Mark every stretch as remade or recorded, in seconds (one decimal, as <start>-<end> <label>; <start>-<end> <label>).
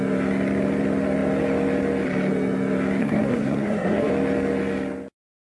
0.0-3.0 recorded; 3.0-4.1 remade; 4.1-5.4 recorded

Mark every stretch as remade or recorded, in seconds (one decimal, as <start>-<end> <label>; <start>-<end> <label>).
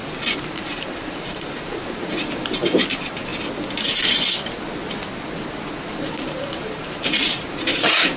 0.0-3.3 remade; 3.3-5.9 recorded; 5.9-8.2 remade